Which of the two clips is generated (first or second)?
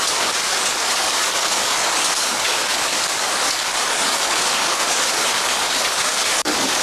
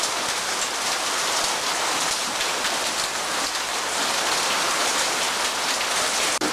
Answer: first